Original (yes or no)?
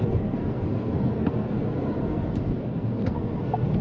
no